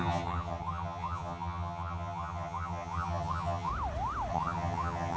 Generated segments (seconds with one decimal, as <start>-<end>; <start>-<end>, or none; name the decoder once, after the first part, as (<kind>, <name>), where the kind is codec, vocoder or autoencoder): 0.0-3.7 (vocoder, HiFi-GAN); 4.3-5.2